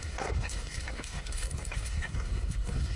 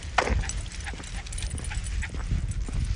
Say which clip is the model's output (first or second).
first